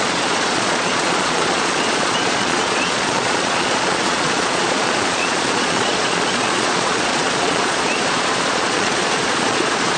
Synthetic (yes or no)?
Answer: yes